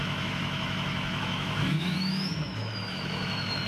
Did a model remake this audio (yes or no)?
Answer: yes